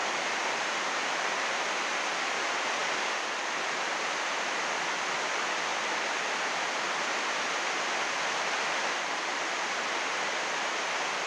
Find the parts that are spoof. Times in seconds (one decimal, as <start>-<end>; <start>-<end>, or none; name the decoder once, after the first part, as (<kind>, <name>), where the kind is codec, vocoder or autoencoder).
none